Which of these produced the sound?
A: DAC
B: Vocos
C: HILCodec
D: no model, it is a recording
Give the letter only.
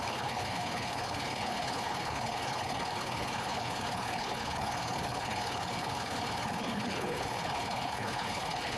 C